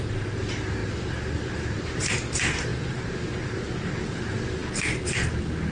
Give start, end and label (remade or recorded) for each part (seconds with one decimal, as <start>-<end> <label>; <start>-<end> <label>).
0.0-2.7 remade; 2.7-4.1 recorded; 4.1-4.6 remade; 4.6-5.3 recorded; 5.3-5.7 remade